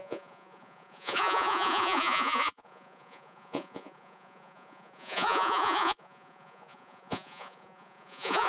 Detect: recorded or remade remade